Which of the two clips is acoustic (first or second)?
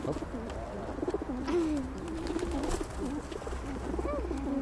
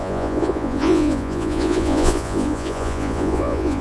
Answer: first